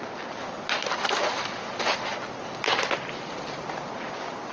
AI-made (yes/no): no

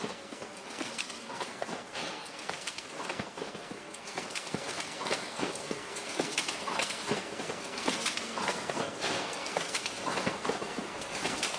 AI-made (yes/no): yes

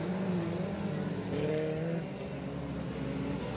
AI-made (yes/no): no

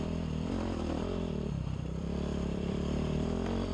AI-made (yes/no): yes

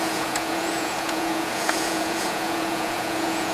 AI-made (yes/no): yes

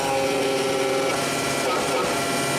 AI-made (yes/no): no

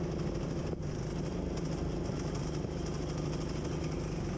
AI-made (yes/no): no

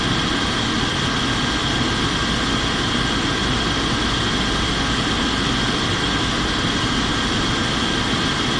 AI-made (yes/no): no